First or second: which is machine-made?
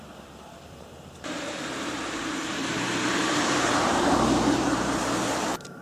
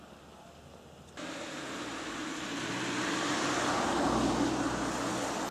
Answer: first